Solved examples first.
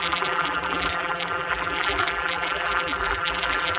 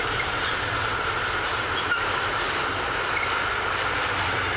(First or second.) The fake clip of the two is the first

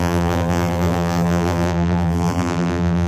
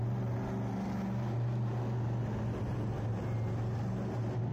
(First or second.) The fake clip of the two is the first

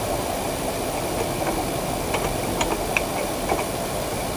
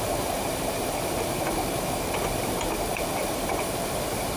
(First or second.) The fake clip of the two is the second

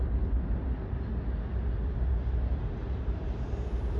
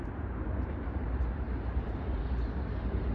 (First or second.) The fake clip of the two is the second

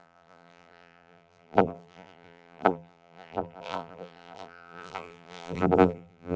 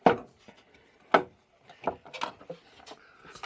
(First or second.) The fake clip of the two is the first